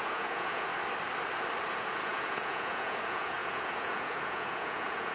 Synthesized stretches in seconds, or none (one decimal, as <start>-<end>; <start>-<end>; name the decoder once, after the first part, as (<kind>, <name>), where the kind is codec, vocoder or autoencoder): 0.0-0.7 (vocoder, Vocos); 1.7-5.1